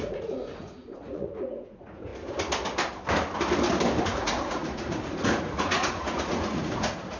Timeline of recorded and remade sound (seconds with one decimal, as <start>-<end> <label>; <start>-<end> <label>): 0.0-2.1 remade; 2.1-4.0 recorded; 4.0-7.2 remade